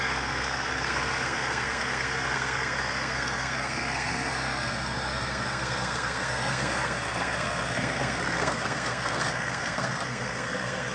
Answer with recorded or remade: remade